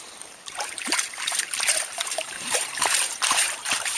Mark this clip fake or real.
fake